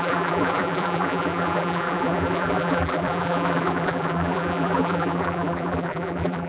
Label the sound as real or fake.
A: fake